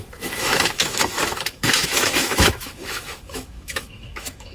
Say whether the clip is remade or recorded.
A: remade